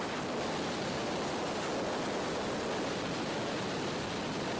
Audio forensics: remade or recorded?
recorded